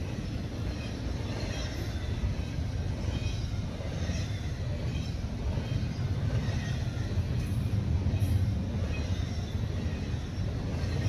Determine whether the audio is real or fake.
real